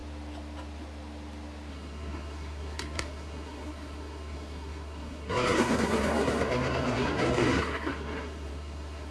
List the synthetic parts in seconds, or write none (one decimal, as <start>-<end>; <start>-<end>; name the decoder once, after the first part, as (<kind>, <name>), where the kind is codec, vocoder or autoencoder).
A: 1.7-9.1 (codec, SNAC)